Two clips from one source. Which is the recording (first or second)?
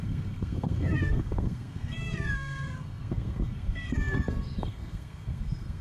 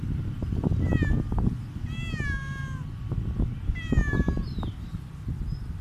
second